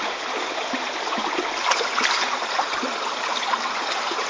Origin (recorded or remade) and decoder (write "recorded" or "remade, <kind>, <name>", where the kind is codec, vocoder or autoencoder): recorded